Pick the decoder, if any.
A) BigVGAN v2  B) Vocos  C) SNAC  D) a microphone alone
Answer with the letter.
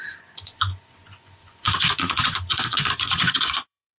B